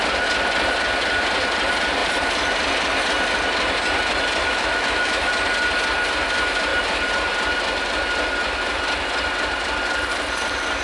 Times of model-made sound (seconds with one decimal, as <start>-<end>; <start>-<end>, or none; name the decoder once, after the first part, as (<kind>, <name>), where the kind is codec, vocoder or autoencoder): 4.4-5.3 (autoencoder, DAC-VAE)